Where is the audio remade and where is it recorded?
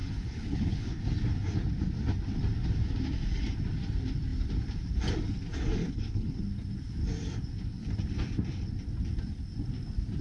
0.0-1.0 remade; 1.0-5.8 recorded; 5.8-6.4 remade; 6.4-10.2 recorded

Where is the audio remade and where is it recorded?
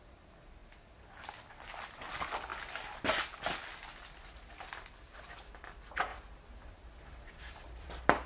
0.0-6.1 recorded; 6.1-8.3 remade